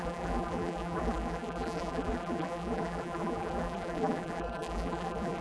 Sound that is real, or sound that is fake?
fake